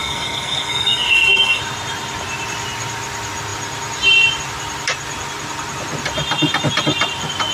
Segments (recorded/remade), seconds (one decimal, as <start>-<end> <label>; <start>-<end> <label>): 0.0-1.6 remade; 1.6-7.5 recorded